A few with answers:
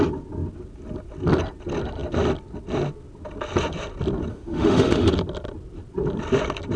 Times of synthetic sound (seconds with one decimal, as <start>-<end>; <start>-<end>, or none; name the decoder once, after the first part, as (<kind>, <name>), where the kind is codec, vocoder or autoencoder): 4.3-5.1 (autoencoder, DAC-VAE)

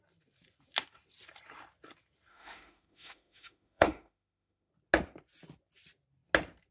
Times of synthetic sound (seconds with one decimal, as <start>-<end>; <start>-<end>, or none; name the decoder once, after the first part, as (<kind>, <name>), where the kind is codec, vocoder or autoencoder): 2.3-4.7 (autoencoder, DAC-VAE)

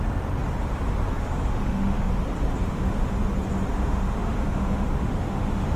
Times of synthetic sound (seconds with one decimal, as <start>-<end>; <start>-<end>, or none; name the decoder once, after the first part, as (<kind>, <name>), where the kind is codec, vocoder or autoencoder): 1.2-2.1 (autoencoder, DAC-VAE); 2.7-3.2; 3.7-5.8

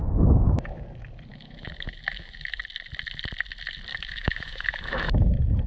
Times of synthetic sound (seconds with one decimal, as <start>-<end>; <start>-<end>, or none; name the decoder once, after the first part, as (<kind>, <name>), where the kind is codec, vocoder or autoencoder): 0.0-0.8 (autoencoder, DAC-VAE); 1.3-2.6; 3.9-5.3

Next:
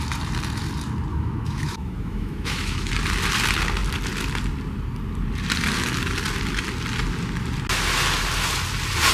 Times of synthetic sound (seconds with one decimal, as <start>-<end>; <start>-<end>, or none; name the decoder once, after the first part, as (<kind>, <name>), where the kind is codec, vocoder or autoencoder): 1.1-2.9 (autoencoder, DAC-VAE)